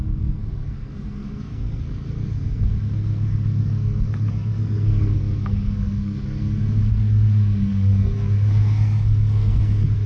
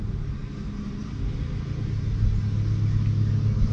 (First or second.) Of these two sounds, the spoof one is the first